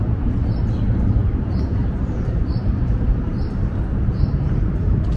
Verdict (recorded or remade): remade